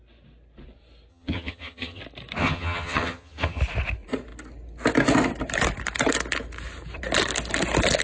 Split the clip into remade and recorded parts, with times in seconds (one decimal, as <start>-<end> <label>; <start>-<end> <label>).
0.0-1.1 recorded; 1.1-2.0 remade; 2.0-2.4 recorded; 2.4-3.6 remade; 3.6-8.0 recorded